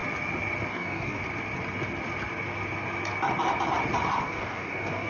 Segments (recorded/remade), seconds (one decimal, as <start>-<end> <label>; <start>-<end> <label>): 0.0-0.7 recorded; 0.7-1.2 remade; 1.2-4.2 recorded; 4.2-5.1 remade